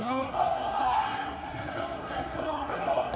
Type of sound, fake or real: fake